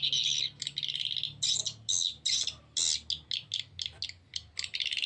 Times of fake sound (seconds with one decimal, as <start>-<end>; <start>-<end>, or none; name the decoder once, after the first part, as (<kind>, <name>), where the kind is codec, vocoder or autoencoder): none